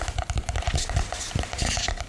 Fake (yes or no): no